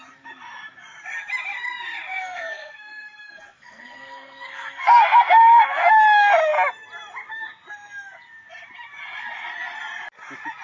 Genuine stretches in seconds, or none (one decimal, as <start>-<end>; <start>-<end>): 0.0-2.1; 5.9-10.6